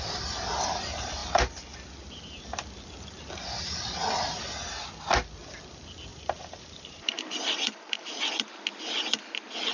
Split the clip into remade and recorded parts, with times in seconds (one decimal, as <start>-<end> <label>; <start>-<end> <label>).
0.0-6.1 recorded; 6.1-8.2 remade; 8.2-9.7 recorded